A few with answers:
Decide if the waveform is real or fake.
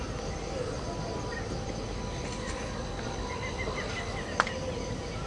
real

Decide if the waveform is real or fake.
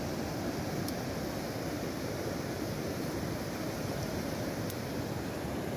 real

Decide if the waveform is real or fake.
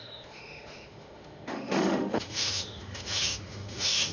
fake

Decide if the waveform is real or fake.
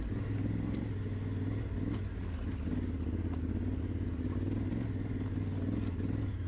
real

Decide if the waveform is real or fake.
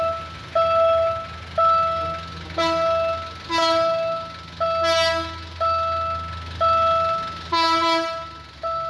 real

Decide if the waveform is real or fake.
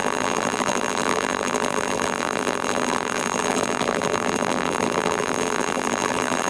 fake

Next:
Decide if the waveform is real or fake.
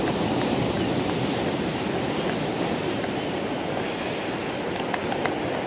real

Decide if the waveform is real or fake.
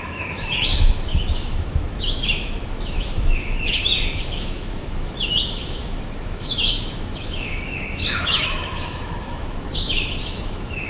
fake